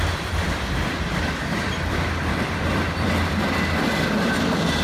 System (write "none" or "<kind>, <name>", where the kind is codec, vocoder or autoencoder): vocoder, BigVGAN v2